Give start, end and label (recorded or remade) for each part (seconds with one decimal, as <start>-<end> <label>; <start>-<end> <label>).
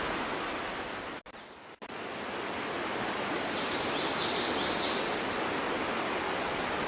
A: 0.0-6.9 recorded